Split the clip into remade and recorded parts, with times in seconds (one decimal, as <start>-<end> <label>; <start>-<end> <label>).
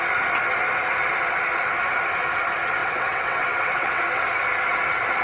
0.0-2.8 recorded; 2.8-4.0 remade; 4.0-5.2 recorded